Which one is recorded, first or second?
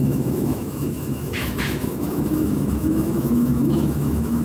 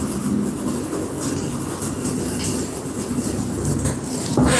second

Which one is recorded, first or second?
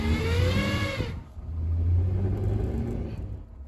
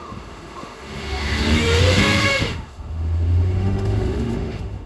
first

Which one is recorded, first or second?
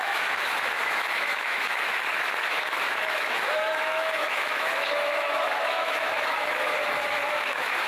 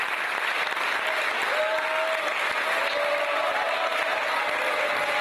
second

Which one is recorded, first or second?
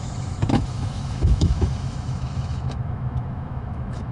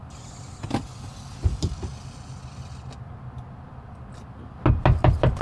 second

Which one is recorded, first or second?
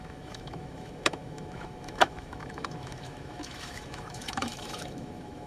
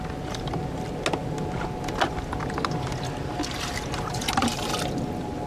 second